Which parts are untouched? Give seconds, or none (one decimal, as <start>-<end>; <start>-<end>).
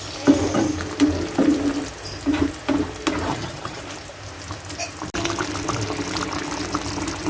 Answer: 0.0-3.3; 3.8-7.3